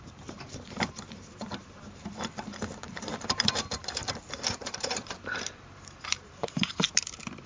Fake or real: fake